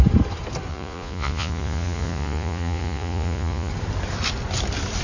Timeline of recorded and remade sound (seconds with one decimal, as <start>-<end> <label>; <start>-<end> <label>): 0.0-0.7 recorded; 0.7-3.7 remade; 3.7-5.0 recorded